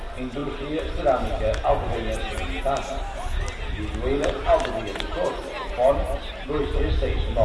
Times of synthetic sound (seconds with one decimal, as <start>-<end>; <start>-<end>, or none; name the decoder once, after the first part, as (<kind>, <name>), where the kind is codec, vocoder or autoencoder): none